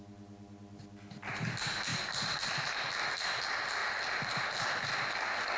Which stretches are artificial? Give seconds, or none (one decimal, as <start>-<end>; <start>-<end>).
none